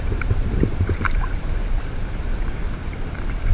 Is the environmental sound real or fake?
fake